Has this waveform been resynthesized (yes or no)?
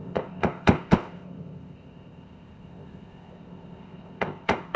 yes